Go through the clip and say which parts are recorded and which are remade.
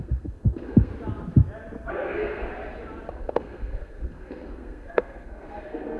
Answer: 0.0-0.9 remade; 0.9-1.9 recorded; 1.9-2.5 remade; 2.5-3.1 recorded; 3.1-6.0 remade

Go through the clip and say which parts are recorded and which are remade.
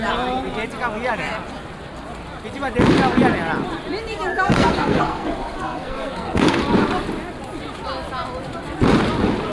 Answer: 0.0-4.3 recorded; 4.3-6.6 remade; 6.6-9.5 recorded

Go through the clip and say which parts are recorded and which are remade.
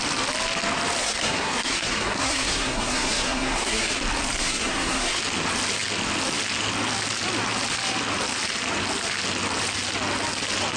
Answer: 0.0-1.0 recorded; 1.0-4.0 remade; 4.0-4.4 recorded; 4.4-5.2 remade; 5.2-10.8 recorded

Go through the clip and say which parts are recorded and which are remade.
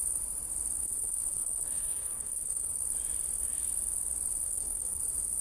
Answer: 0.0-0.8 recorded; 0.8-2.8 remade; 2.8-4.4 recorded; 4.4-5.0 remade; 5.0-5.4 recorded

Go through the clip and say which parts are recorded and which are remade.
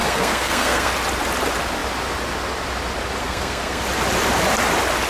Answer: 0.0-0.9 remade; 0.9-3.2 recorded; 3.2-3.8 remade; 3.8-5.1 recorded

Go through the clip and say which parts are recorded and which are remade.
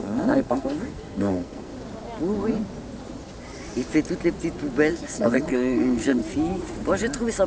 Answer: 0.0-1.7 remade; 1.7-4.9 recorded; 4.9-6.2 remade; 6.2-7.5 recorded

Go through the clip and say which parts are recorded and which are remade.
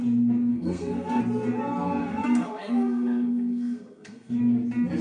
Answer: 0.0-0.5 recorded; 0.5-1.2 remade; 1.2-2.0 recorded; 2.0-4.4 remade; 4.4-5.0 recorded